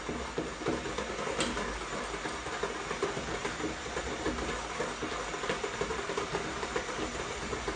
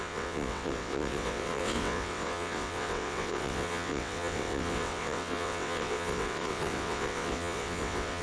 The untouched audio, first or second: first